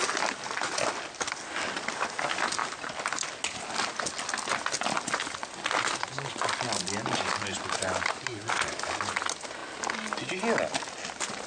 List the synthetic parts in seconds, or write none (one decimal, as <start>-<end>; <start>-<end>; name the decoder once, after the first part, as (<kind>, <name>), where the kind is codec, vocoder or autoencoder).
none